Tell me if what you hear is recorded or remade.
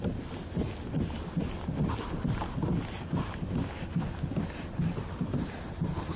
recorded